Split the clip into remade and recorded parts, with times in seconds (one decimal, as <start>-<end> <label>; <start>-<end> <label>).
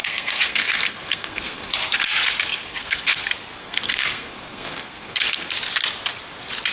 0.0-1.7 remade; 1.7-2.5 recorded; 2.5-3.2 remade; 3.2-3.6 recorded; 3.6-5.5 remade; 5.5-6.7 recorded